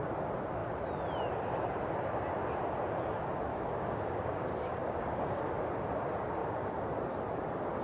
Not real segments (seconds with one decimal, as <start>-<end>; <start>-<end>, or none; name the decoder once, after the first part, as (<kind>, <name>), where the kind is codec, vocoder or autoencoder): 3.5-5.4 (codec, DAC); 6.4-6.9